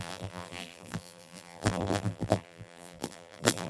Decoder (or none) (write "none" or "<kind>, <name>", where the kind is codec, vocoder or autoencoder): vocoder, BigVGAN v2